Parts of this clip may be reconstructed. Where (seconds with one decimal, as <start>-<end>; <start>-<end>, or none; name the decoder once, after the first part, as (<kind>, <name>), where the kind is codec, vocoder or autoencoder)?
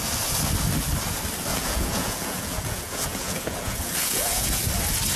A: 1.5-4.6 (vocoder, Vocos)